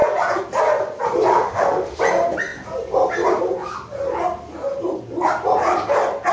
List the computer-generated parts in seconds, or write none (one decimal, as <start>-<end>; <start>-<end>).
1.3-2.0